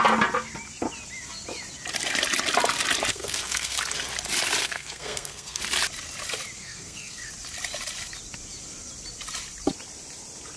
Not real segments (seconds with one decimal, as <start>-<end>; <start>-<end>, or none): 3.1-3.8; 4.6-5.6; 6.6-7.3